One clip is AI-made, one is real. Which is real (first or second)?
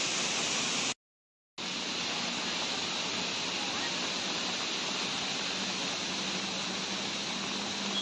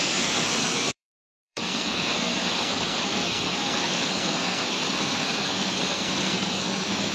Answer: first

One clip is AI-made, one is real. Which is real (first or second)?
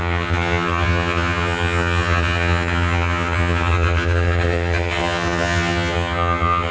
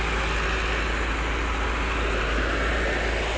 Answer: second